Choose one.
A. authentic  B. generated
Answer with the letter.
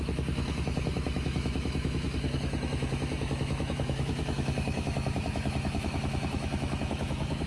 B